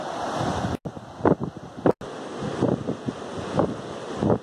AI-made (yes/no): no